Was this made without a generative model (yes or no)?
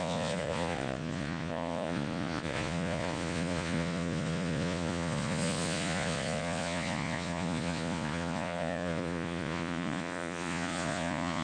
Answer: no